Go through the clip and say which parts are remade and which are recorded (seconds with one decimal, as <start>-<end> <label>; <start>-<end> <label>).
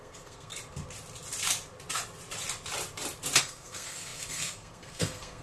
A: 0.0-0.5 remade; 0.5-3.4 recorded; 3.4-5.4 remade